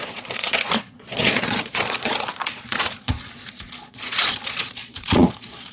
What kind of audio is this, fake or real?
fake